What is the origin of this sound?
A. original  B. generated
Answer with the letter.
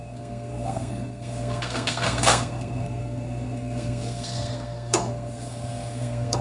B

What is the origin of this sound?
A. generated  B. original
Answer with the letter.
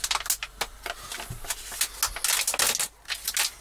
B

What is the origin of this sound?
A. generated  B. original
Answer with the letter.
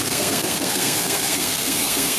A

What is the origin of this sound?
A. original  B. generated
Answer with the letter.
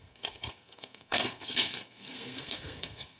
B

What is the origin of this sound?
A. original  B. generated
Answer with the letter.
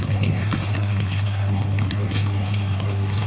B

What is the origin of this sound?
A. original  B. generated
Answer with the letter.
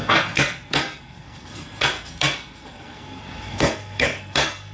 B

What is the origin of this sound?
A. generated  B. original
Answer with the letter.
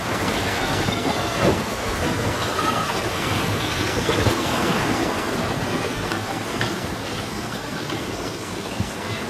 A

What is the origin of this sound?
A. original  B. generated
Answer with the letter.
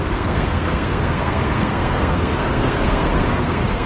B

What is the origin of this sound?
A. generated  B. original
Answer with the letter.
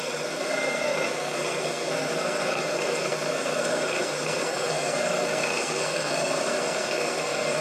A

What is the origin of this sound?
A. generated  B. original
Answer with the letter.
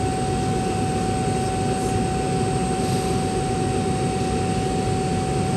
B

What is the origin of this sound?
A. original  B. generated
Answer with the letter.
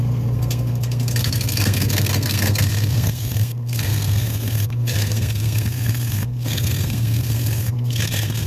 B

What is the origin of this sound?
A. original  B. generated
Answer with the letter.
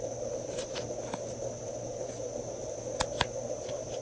A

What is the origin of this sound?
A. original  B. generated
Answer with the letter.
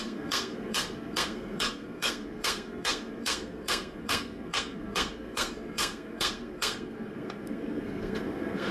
B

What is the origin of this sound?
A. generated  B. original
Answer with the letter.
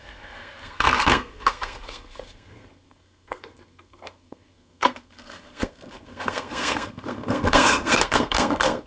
A